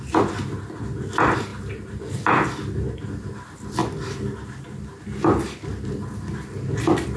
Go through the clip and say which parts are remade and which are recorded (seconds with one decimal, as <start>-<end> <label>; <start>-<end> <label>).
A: 0.0-7.2 recorded